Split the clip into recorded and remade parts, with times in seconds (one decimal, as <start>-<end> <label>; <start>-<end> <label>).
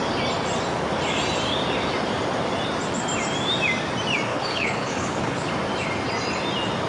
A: 0.0-4.3 recorded; 4.3-5.5 remade; 5.5-6.9 recorded